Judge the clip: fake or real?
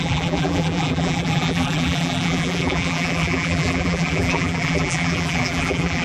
fake